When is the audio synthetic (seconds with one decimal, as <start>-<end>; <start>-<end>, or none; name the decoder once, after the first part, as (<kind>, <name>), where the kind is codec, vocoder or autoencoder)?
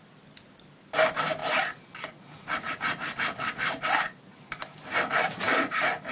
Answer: none